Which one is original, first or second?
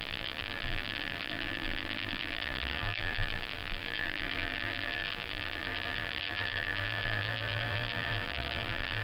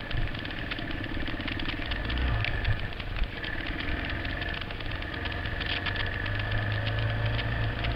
second